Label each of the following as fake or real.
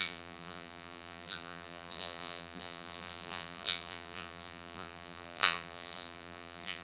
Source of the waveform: fake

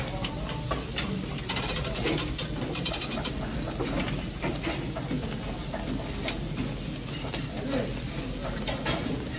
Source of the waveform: real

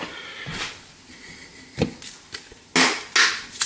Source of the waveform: real